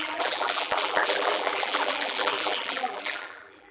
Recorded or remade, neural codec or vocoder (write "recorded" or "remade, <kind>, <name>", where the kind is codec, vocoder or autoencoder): remade, vocoder, BigVGAN v2